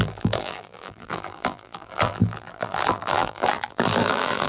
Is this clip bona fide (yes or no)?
no